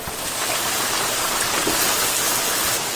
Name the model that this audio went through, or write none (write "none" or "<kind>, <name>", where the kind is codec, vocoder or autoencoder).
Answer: none